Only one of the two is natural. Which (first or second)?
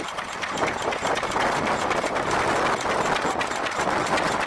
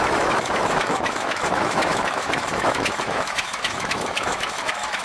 first